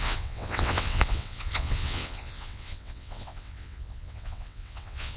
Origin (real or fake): fake